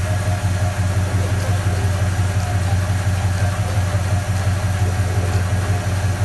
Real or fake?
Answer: real